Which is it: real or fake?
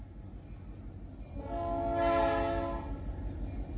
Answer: real